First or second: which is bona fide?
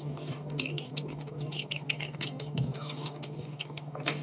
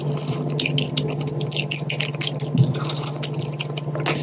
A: second